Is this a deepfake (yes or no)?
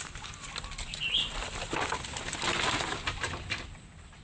no